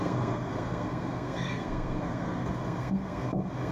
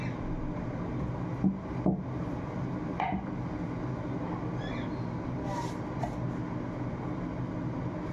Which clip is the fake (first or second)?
first